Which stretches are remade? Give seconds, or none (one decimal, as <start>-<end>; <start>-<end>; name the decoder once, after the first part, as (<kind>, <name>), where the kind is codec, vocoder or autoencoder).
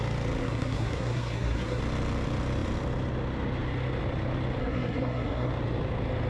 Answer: 0.4-1.8 (codec, SNAC); 4.6-5.5